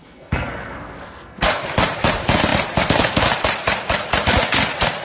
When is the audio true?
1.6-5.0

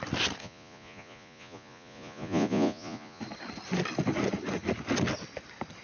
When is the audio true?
0.0-0.4; 3.2-5.8

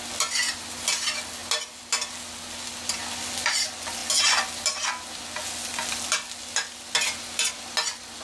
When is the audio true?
0.0-8.2

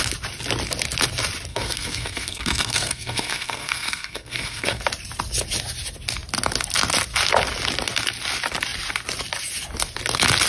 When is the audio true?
0.0-1.5; 4.8-10.5

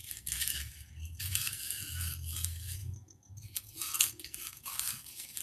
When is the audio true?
none

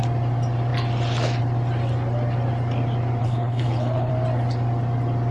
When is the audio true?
0.0-3.2; 4.1-5.3